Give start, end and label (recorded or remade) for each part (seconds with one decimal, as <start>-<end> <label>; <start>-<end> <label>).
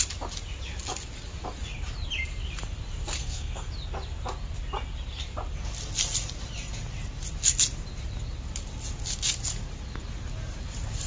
0.0-3.2 recorded; 3.2-3.7 remade; 3.7-11.1 recorded